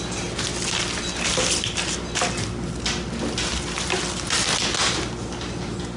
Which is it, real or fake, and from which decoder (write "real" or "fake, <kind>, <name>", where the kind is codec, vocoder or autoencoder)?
real